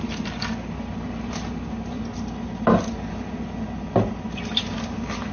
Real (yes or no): yes